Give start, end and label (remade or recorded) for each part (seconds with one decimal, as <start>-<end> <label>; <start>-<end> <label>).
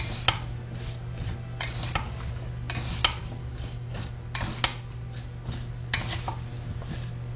0.0-3.4 recorded; 3.4-4.1 remade; 4.1-7.4 recorded